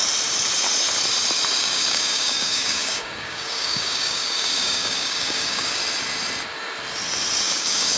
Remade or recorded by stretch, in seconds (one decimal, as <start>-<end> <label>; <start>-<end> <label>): 0.0-1.5 recorded; 1.5-5.8 remade; 5.8-7.4 recorded; 7.4-8.0 remade